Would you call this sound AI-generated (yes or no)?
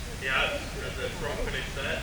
no